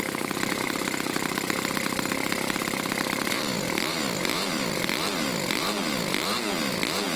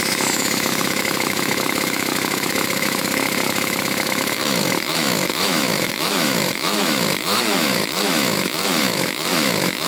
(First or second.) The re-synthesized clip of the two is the second